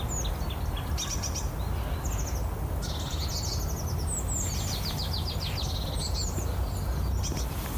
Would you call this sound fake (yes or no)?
no